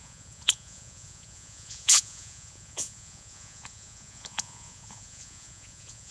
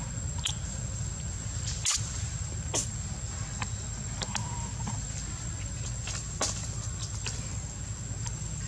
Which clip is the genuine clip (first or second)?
second